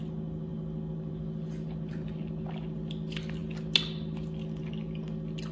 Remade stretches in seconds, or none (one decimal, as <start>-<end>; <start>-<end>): none